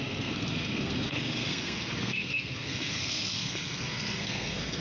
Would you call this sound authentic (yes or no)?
no